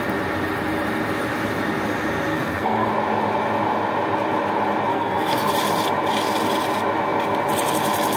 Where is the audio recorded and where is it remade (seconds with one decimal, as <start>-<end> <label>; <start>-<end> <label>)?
0.0-2.3 recorded; 2.3-2.9 remade; 2.9-4.9 recorded; 4.9-5.5 remade; 5.5-8.2 recorded